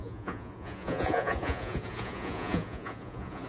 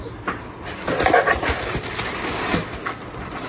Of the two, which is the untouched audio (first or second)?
second